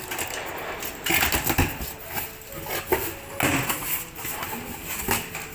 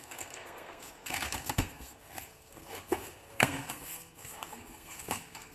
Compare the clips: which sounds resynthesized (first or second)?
second